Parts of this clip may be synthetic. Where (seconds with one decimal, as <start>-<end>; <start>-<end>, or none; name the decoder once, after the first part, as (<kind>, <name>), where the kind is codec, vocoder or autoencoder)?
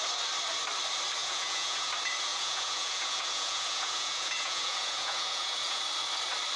1.2-1.9 (vocoder, Vocos); 2.3-5.8